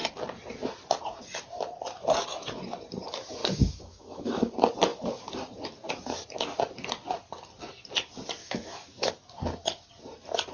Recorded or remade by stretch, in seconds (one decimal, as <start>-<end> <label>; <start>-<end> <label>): 0.0-3.4 recorded; 3.4-4.5 remade; 4.5-8.4 recorded; 8.4-9.1 remade; 9.1-10.5 recorded